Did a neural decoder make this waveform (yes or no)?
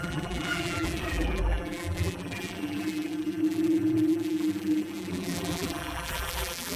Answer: yes